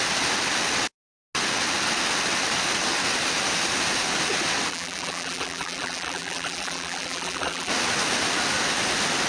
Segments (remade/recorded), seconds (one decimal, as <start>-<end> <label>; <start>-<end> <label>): 0.0-4.7 recorded; 4.7-7.7 remade; 7.7-9.3 recorded